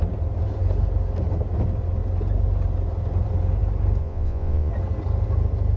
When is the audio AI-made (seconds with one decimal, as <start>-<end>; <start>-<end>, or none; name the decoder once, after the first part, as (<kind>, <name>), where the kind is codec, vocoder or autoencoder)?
4.0-4.7 (vocoder, Vocos)